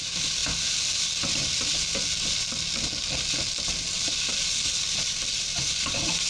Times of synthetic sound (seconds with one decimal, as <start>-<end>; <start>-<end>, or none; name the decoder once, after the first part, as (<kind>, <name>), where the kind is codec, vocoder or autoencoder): 0.0-0.4 (vocoder, BigVGAN v2); 0.9-1.4; 5.2-6.3

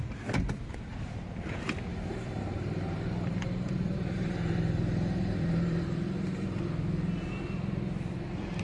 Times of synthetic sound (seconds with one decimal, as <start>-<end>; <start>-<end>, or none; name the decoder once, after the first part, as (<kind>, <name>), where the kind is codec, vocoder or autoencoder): 1.9-6.6 (vocoder, BigVGAN v2)

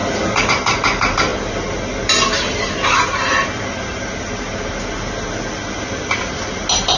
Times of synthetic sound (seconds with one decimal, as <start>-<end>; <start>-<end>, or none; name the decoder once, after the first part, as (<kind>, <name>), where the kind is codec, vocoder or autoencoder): none

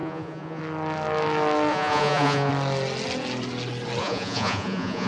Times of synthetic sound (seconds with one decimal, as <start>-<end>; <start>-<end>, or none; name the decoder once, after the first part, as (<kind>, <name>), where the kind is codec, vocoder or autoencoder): 0.0-0.6 (vocoder, Vocos); 1.7-2.5; 4.0-5.1

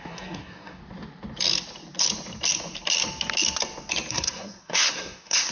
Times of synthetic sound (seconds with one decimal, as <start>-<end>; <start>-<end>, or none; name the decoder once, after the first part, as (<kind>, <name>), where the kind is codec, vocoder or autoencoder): 0.0-0.8 (codec, SNAC); 4.1-5.5

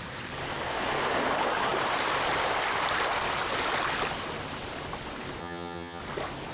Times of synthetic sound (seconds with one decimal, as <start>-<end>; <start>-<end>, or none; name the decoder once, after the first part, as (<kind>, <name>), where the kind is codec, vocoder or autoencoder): 5.4-6.0 (vocoder, HiFi-GAN)